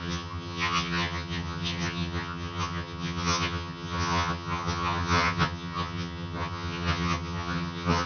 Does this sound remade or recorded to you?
remade